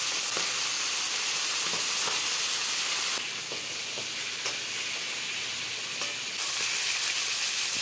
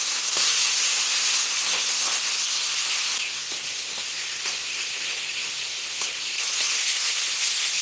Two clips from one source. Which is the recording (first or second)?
first